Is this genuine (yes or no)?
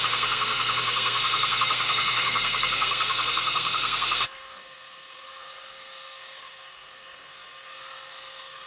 no